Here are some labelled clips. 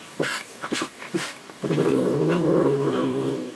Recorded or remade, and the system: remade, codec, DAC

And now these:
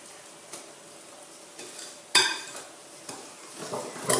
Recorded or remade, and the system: recorded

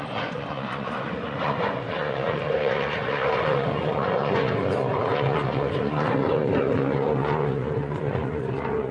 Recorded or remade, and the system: remade, vocoder, Vocos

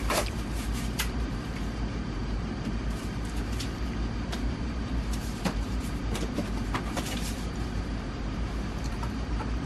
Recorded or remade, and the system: remade, vocoder, BigVGAN v2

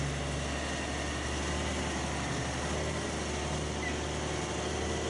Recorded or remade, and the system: recorded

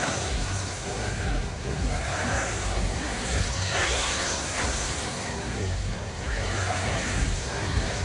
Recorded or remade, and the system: remade, codec, SNAC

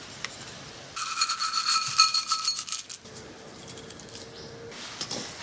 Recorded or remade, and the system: recorded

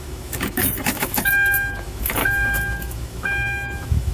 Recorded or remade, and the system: remade, autoencoder, DAC-VAE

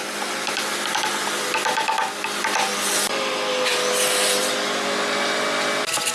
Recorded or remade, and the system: recorded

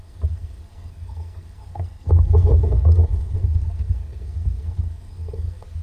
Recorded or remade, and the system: remade, codec, SNAC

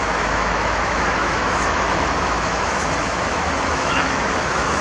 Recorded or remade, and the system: remade, autoencoder, DAC-VAE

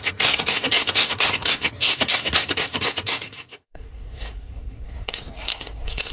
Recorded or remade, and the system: remade, codec, SNAC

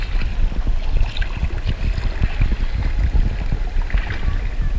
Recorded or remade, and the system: recorded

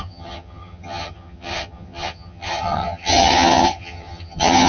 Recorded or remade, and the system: remade, vocoder, HiFi-GAN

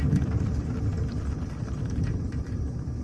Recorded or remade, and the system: remade, vocoder, BigVGAN v2